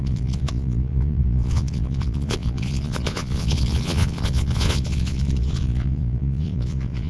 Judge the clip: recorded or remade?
remade